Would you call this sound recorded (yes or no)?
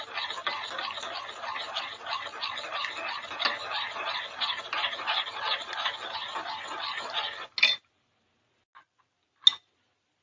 yes